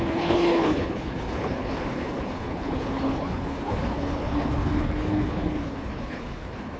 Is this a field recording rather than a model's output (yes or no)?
no